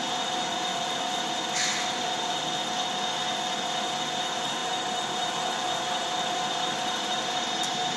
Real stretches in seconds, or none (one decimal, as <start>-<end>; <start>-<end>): 0.0-1.7; 2.3-4.6